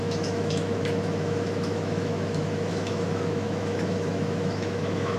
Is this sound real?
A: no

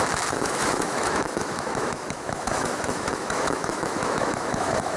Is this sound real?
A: no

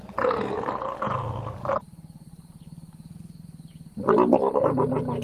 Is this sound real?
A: yes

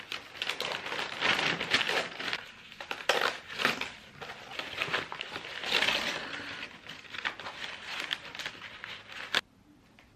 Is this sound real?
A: yes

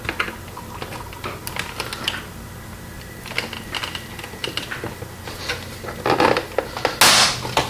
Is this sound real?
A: yes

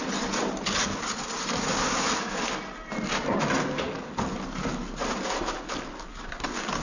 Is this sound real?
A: yes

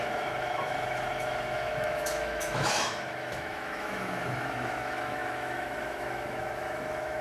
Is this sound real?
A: no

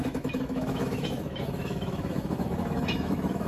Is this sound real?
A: no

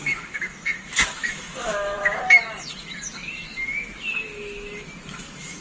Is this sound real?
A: no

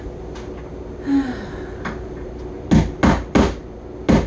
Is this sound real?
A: yes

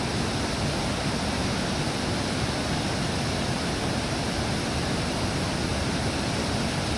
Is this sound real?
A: yes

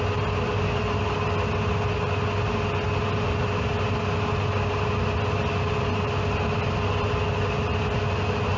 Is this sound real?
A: yes